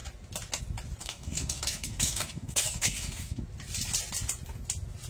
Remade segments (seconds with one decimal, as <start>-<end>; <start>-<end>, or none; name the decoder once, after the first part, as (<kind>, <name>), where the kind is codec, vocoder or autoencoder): 1.0-3.4 (codec, DAC)